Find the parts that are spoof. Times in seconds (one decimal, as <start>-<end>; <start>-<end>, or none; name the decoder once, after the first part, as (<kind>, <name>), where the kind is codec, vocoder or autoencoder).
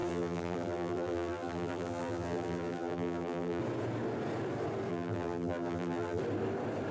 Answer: 0.0-3.6 (vocoder, BigVGAN v2); 4.9-6.2